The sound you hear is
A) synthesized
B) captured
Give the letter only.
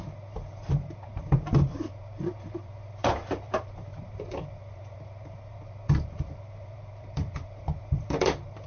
A